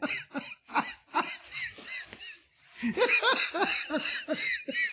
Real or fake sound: real